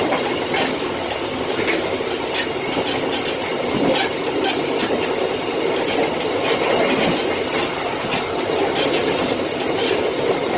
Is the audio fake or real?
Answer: real